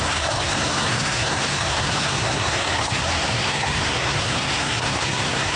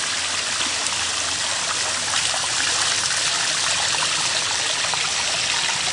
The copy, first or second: first